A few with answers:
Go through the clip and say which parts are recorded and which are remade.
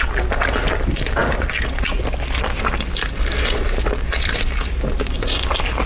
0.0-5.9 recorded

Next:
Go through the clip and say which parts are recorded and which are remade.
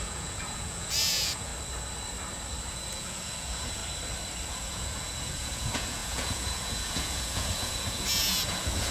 0.0-1.5 remade; 1.5-2.7 recorded; 2.7-3.8 remade; 3.8-4.5 recorded; 4.5-8.9 remade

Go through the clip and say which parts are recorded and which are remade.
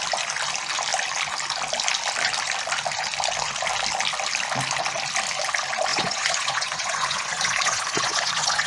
0.0-5.9 recorded; 5.9-8.7 remade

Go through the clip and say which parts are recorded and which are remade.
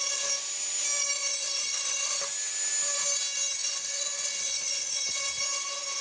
0.0-3.6 recorded; 3.6-5.0 remade; 5.0-6.0 recorded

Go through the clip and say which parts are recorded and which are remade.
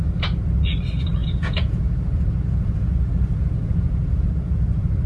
0.0-1.2 recorded; 1.2-4.3 remade; 4.3-5.1 recorded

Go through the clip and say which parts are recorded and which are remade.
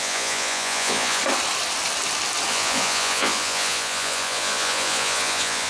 0.0-1.2 remade; 1.2-2.5 recorded; 2.5-5.7 remade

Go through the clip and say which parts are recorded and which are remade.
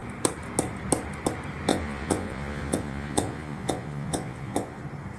0.0-1.7 recorded; 1.7-4.8 remade; 4.8-5.2 recorded